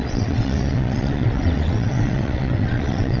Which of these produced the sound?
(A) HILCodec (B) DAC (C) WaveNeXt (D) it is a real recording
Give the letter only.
C